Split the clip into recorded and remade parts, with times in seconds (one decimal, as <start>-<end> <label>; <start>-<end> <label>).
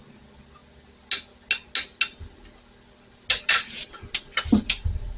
0.0-5.2 recorded